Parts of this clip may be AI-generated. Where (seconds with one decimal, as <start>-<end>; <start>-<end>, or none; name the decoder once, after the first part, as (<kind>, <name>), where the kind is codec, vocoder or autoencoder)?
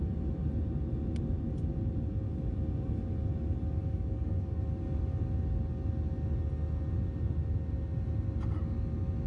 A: 3.8-4.6 (codec, DAC)